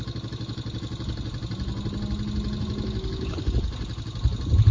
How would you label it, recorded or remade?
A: recorded